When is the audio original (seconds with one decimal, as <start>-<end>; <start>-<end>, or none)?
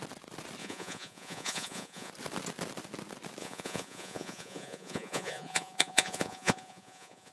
0.0-0.6; 2.1-3.4